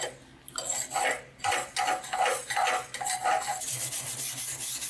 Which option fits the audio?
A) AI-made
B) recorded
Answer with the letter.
B